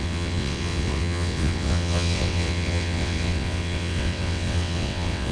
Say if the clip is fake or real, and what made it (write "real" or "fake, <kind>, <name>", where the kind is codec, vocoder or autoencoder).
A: fake, vocoder, WaveNeXt